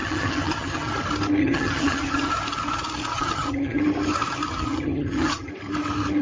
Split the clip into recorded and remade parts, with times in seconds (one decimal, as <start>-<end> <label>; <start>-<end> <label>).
0.0-0.9 remade; 0.9-1.4 recorded; 1.4-2.3 remade; 2.3-3.1 recorded; 3.1-3.8 remade; 3.8-4.5 recorded; 4.5-5.5 remade; 5.5-6.2 recorded